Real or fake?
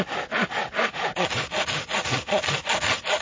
real